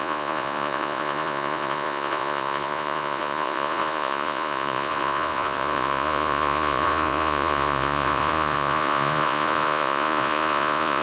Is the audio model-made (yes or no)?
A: yes